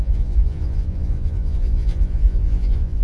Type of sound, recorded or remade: remade